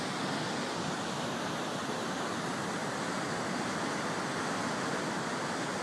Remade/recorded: recorded